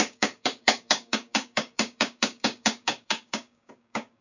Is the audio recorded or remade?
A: remade